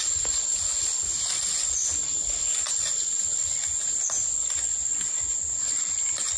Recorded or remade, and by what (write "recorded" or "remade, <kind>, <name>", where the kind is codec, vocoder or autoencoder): recorded